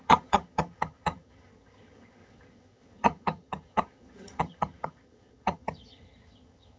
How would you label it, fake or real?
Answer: fake